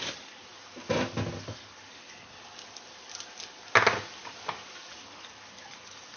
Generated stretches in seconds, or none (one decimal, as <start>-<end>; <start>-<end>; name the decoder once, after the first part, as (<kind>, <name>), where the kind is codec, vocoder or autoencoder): none